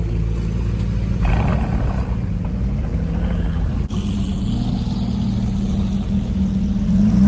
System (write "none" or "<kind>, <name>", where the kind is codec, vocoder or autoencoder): none